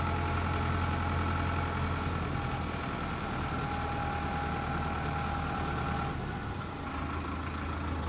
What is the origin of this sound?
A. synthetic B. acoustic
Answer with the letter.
B